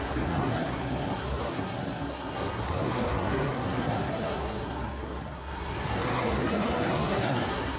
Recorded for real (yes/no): no